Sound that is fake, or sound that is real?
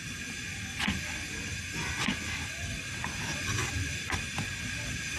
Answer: real